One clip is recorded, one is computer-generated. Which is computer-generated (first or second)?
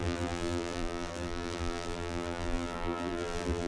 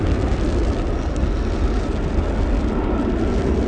first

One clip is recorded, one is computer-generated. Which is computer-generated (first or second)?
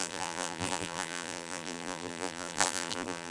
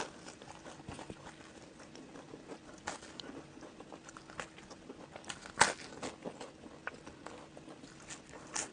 first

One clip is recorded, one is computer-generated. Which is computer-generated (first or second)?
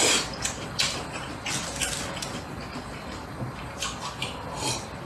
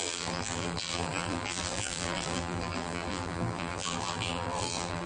second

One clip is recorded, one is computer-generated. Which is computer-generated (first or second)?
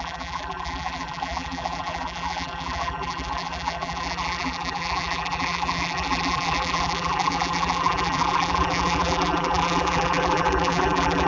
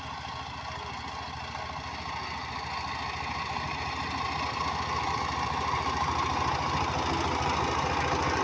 first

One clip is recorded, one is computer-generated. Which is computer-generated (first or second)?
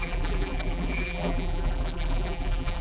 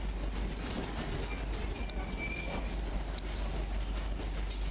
first